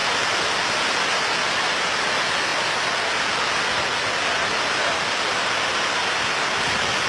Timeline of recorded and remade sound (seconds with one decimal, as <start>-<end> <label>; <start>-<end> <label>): 0.0-7.1 recorded

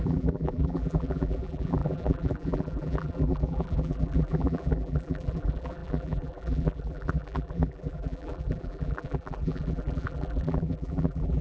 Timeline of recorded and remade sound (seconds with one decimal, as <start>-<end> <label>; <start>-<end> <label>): 0.0-11.4 remade

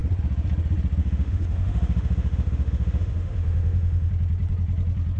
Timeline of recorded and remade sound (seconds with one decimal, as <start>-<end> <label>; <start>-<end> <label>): 0.0-1.0 recorded; 1.0-4.1 remade; 4.1-5.2 recorded